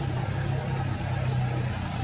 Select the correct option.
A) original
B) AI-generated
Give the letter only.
A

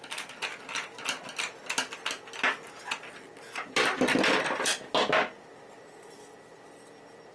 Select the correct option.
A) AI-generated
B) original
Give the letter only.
B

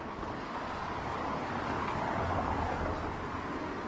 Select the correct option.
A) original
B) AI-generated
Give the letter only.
A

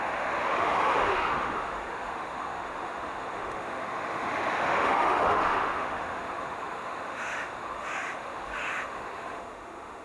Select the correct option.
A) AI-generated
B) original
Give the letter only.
A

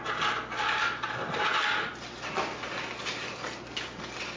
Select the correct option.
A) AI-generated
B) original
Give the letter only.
B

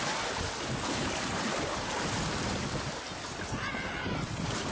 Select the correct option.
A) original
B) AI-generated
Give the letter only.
A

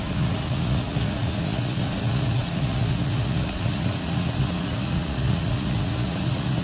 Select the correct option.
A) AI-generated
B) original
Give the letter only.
A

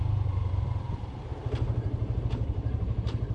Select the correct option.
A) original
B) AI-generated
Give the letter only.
B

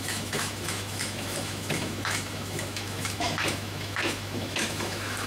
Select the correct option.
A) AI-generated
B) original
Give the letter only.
A